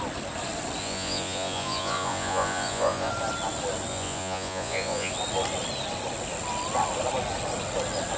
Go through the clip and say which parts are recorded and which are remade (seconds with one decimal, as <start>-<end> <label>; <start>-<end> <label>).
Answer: 0.0-0.8 recorded; 0.8-3.1 remade; 3.1-3.9 recorded; 3.9-5.1 remade; 5.1-8.2 recorded